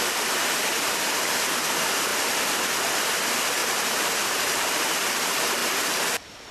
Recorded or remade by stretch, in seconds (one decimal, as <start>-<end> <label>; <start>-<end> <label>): 0.0-3.6 recorded; 3.6-4.7 remade; 4.7-6.5 recorded